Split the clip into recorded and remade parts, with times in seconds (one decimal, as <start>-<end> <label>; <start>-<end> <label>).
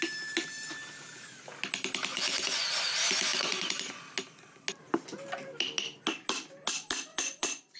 0.0-2.1 recorded; 2.1-2.7 remade; 2.7-3.3 recorded; 3.3-4.0 remade; 4.0-7.1 recorded; 7.1-7.8 remade